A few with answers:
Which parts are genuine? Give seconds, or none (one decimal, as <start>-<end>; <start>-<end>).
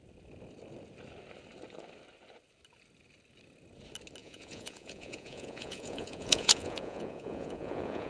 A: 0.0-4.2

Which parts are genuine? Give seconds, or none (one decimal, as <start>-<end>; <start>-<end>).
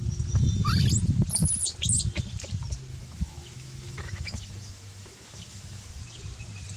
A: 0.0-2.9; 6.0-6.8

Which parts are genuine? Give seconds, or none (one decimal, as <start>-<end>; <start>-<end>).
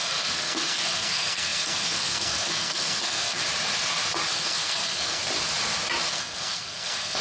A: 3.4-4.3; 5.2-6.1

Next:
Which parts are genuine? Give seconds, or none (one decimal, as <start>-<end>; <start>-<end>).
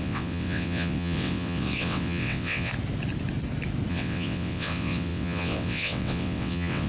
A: 2.7-3.9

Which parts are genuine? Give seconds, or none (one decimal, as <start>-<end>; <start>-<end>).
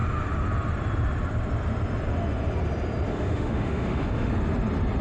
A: 0.0-3.1; 4.3-5.0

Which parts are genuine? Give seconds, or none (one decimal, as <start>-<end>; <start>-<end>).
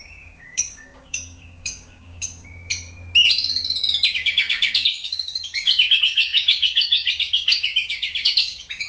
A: 2.7-4.1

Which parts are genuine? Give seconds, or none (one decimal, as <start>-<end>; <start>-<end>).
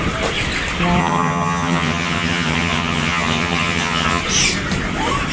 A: 0.0-1.0; 4.2-5.3